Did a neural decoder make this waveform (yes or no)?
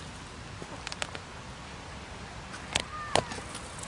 no